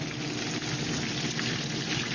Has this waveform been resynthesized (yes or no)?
no